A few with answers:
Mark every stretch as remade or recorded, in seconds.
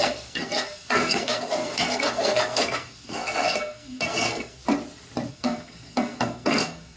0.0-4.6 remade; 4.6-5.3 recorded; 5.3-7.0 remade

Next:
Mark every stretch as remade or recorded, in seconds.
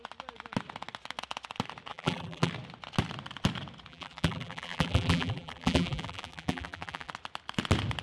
0.0-1.9 recorded; 1.9-2.5 remade; 2.5-3.9 recorded; 3.9-7.1 remade; 7.1-8.0 recorded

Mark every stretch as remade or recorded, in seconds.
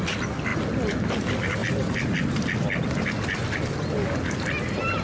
0.0-5.0 recorded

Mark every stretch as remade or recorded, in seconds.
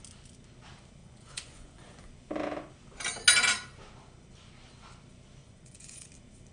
0.0-1.0 recorded; 1.0-2.1 remade; 2.1-5.4 recorded; 5.4-6.1 remade; 6.1-6.5 recorded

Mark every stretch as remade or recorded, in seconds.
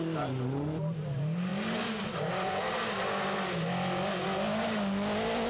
0.0-5.5 recorded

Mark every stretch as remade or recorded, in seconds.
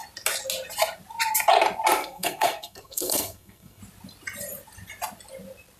0.0-2.0 recorded; 2.0-3.8 remade; 3.8-5.8 recorded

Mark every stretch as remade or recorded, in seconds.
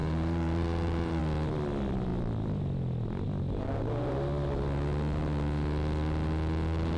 0.0-1.2 remade; 1.2-7.0 recorded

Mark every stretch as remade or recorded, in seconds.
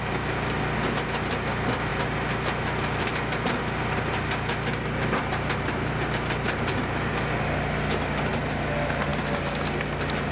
0.0-10.3 recorded